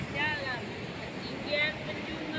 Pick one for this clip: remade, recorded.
recorded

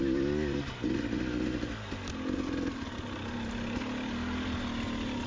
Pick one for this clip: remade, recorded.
recorded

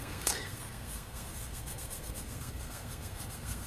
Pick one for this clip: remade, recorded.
remade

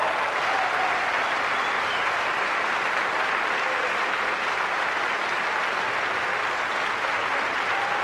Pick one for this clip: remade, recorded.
recorded